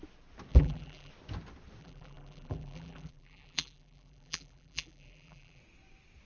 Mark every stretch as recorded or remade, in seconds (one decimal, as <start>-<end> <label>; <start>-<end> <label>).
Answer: 0.0-0.5 recorded; 0.5-1.1 remade; 1.1-1.8 recorded; 1.8-5.6 remade; 5.6-6.3 recorded